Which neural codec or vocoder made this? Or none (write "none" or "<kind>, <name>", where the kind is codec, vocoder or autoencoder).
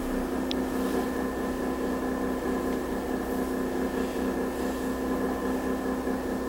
none